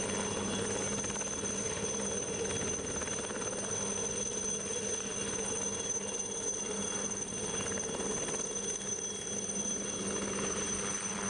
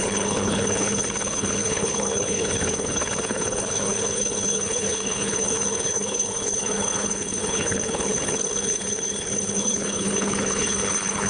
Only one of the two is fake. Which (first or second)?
second